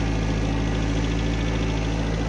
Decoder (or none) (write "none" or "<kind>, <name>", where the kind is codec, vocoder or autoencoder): none